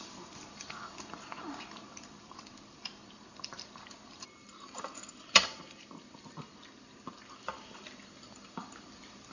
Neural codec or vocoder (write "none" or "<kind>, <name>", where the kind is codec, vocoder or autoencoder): vocoder, BigVGAN v2